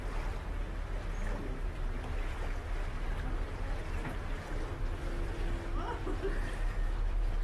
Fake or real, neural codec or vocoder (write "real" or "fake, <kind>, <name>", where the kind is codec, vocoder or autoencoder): real